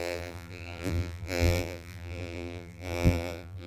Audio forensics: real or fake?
fake